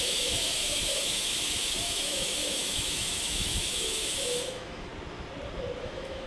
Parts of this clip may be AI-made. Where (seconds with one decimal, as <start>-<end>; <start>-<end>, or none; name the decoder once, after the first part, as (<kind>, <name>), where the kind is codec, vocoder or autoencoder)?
0.0-4.9 (autoencoder, DAC-VAE); 5.8-6.3